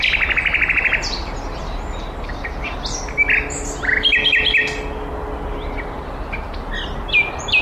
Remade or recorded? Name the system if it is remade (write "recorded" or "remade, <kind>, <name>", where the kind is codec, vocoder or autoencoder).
recorded